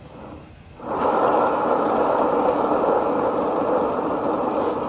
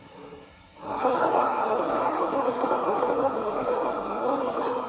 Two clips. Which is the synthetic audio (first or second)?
second